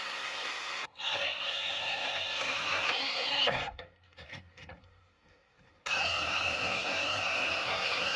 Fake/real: fake